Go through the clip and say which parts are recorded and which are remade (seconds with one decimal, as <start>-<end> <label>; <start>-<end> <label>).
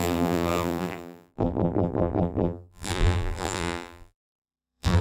0.0-5.0 remade